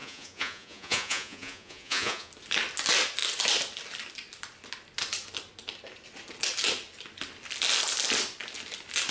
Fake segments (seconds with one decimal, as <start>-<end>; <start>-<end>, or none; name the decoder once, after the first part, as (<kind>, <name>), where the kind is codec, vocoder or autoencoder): 0.0-2.3 (vocoder, Vocos)